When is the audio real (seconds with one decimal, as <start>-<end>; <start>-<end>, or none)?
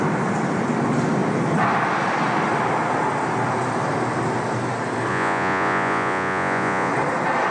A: 0.0-5.1; 6.9-7.5